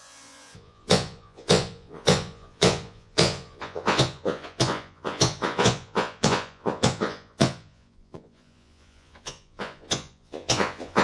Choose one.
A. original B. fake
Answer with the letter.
B